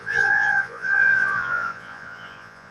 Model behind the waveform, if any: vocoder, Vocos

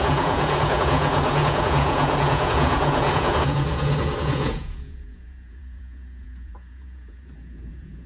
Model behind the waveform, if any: vocoder, Vocos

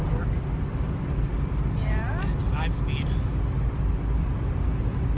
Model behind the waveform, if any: none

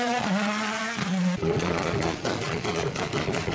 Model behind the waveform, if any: vocoder, Vocos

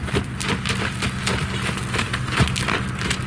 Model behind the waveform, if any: none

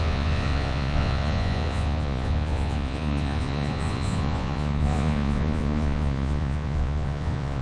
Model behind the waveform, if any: vocoder, Vocos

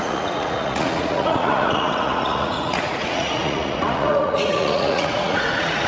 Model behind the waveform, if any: vocoder, Vocos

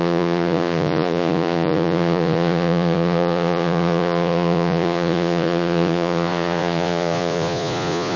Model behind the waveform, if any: vocoder, Vocos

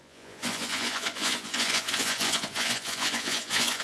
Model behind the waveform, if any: vocoder, Vocos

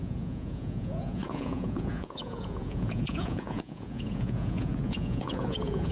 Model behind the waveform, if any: vocoder, Vocos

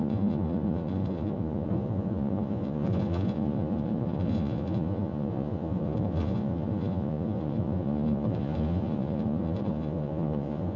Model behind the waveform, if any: vocoder, Vocos